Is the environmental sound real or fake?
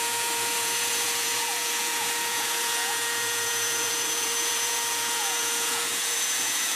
fake